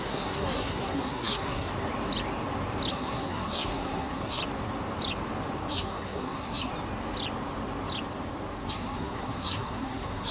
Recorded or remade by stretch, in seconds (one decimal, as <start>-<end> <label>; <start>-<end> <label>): 0.0-1.7 remade; 1.7-2.9 recorded; 2.9-4.4 remade; 4.4-5.7 recorded; 5.7-6.7 remade; 6.7-8.7 recorded; 8.7-10.3 remade

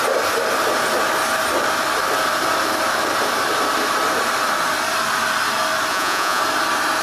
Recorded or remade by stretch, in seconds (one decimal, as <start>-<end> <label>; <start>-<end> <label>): 0.0-5.9 recorded; 5.9-6.4 remade; 6.4-7.0 recorded

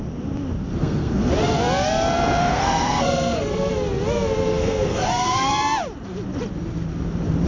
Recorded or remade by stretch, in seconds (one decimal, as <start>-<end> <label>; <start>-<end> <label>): 0.0-0.8 recorded; 0.8-1.3 remade; 1.3-2.4 recorded; 2.4-3.7 remade; 3.7-4.5 recorded; 4.5-5.5 remade; 5.5-7.5 recorded

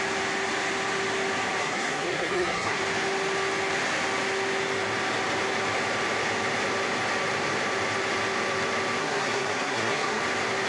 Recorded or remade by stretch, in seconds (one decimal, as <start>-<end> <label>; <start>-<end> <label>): 0.0-1.6 recorded; 1.6-2.8 remade; 2.8-9.0 recorded; 9.0-10.2 remade; 10.2-10.7 recorded